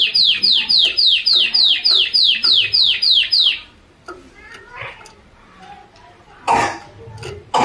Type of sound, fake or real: real